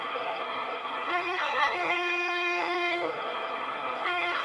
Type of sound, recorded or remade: remade